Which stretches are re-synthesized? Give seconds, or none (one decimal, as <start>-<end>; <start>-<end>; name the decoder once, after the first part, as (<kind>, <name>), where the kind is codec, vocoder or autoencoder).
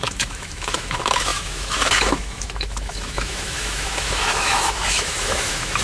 0.0-5.8 (autoencoder, DAC-VAE)